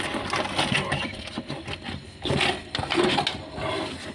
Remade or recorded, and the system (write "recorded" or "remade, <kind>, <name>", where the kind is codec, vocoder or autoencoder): recorded